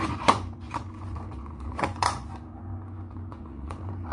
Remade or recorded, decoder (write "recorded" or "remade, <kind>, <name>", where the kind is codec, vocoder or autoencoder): remade, vocoder, Vocos